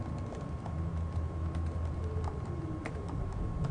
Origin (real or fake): real